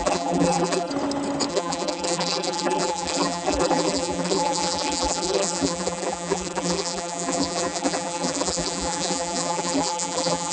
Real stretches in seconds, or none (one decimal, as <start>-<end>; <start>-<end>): 0.9-1.5

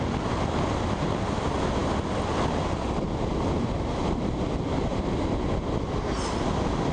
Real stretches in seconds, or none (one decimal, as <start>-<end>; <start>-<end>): 0.0-6.9

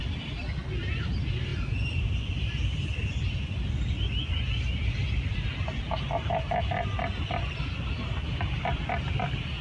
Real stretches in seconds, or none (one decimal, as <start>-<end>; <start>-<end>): 0.0-9.6